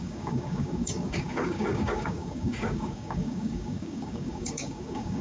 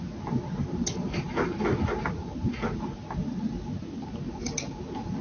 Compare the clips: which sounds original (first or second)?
second